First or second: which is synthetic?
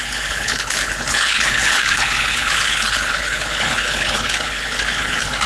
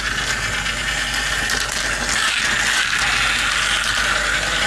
first